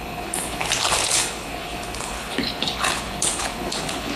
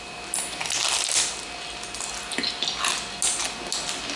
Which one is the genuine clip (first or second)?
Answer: second